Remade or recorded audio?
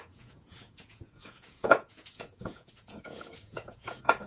remade